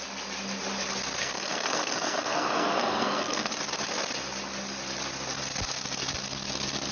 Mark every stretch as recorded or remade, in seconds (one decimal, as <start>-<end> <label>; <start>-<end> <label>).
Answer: 0.0-1.2 recorded; 1.2-3.5 remade; 3.5-6.9 recorded